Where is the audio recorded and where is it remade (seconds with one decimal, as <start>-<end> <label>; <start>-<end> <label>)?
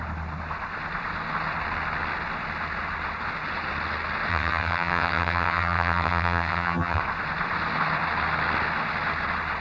0.0-4.3 recorded; 4.3-7.0 remade; 7.0-9.6 recorded